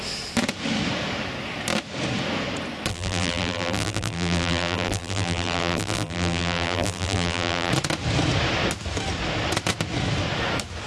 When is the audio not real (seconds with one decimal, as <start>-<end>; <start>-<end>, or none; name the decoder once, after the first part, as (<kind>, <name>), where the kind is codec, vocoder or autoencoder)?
2.9-7.7 (vocoder, BigVGAN v2)